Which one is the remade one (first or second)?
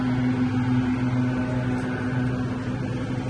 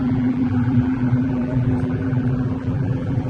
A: second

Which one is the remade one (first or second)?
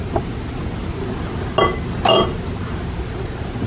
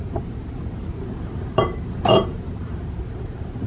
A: second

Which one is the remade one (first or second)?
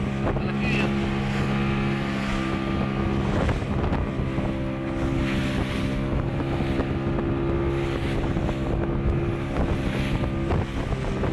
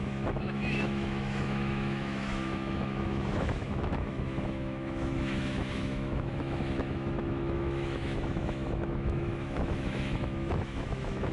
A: second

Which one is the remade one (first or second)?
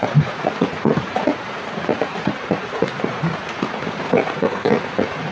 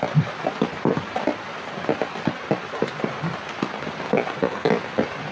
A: first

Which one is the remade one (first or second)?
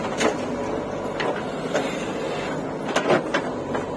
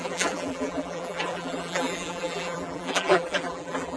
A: second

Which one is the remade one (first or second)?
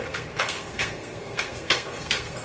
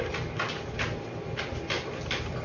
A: first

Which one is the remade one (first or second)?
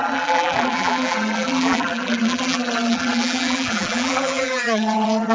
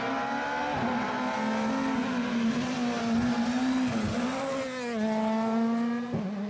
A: first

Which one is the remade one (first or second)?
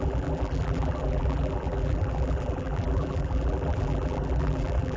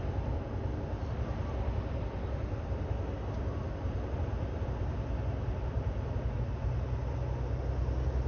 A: first